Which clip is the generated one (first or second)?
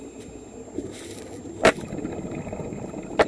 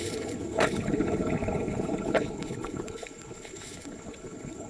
second